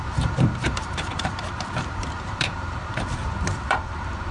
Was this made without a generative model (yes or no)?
no